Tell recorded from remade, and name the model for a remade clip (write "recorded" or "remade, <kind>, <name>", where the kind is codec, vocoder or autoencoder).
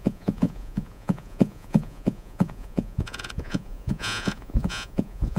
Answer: remade, vocoder, Vocos